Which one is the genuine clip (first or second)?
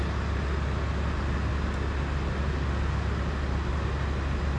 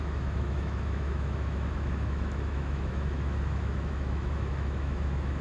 first